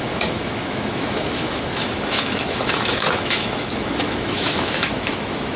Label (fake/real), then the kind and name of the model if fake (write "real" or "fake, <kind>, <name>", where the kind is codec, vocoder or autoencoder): fake, autoencoder, DAC-VAE